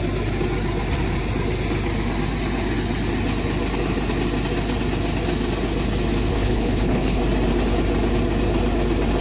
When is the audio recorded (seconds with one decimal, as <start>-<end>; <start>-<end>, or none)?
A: 0.0-6.3; 7.2-9.2